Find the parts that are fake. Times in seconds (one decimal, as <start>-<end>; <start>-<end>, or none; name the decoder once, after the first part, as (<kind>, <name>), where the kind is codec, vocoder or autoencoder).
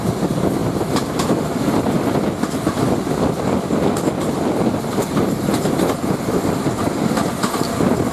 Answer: none